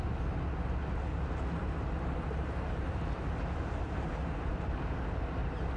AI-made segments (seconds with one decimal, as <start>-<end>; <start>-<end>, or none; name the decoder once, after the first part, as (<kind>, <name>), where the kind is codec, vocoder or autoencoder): 1.6-4.7 (vocoder, BigVGAN v2)